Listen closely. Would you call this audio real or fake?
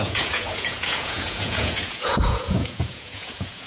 fake